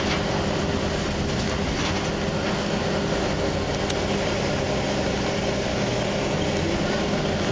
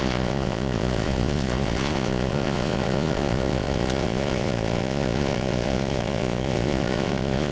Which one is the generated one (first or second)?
second